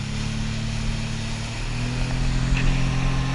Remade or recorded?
recorded